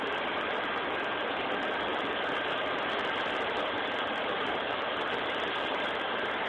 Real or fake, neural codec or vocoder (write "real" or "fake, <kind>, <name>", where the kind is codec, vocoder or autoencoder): fake, vocoder, BigVGAN v2